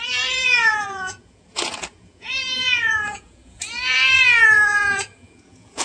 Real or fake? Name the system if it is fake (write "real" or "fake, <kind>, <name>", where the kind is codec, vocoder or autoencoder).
fake, vocoder, Vocos